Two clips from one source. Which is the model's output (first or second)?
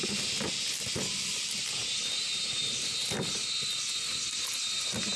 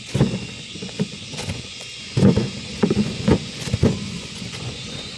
second